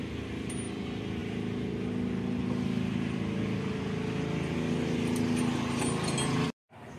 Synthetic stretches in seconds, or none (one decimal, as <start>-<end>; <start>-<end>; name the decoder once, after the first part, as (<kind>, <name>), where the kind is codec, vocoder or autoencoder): none